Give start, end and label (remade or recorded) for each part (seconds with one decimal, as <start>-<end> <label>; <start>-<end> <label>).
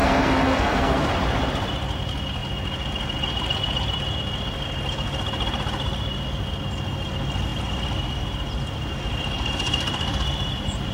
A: 0.0-1.1 remade; 1.1-10.9 recorded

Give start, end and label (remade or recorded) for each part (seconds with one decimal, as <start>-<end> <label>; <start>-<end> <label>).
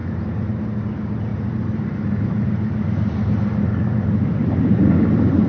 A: 0.0-0.7 remade; 0.7-1.3 recorded; 1.3-4.6 remade; 4.6-5.5 recorded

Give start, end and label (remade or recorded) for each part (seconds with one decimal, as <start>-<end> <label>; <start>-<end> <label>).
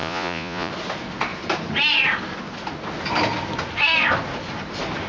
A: 0.0-0.7 remade; 0.7-5.1 recorded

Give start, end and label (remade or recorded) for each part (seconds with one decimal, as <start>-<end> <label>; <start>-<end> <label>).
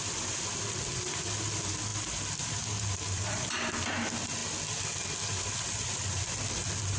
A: 0.0-7.0 recorded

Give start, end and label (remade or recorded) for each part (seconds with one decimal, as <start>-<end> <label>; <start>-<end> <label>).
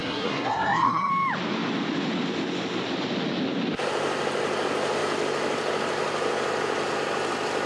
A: 0.0-1.1 remade; 1.1-7.7 recorded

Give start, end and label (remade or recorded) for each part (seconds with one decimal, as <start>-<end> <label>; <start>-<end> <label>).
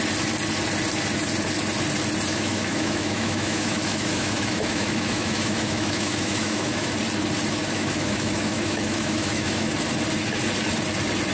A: 0.0-2.3 recorded; 2.3-6.9 remade; 6.9-7.6 recorded; 7.6-9.7 remade; 9.7-11.3 recorded